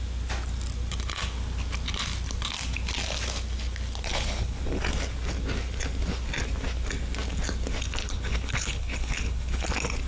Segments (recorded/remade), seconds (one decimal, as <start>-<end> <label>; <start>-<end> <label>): 0.0-4.1 recorded; 4.1-4.6 remade; 4.6-8.0 recorded; 8.0-9.7 remade; 9.7-10.1 recorded